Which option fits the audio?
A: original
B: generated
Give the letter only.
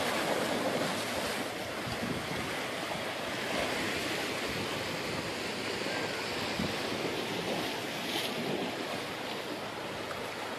A